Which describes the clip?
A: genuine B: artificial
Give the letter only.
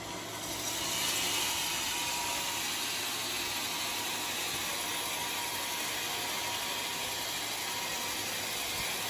A